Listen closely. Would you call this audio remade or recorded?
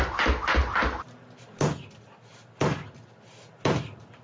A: recorded